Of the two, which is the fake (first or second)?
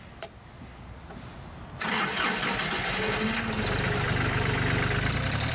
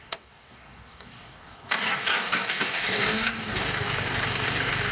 second